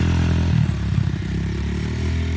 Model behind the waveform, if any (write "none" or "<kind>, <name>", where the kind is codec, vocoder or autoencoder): none